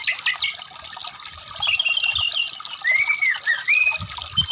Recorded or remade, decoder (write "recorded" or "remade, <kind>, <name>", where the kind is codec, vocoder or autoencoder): recorded